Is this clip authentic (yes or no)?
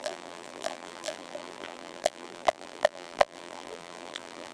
no